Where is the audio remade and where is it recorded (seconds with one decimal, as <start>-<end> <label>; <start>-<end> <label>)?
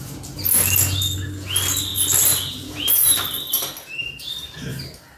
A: 0.0-5.2 recorded